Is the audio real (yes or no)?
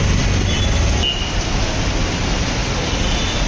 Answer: yes